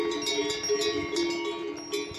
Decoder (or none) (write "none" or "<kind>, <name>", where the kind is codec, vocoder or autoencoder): none